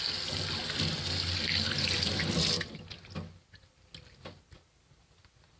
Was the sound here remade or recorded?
recorded